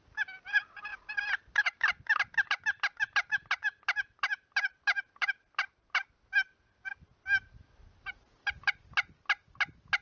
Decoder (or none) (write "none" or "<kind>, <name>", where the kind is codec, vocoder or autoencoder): none